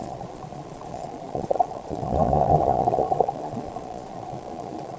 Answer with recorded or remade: remade